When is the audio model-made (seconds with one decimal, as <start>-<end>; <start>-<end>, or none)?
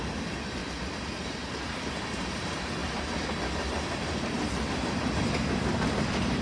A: none